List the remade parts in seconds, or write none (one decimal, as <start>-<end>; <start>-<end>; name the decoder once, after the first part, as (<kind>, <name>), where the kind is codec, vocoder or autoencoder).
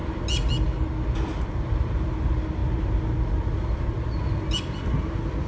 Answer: none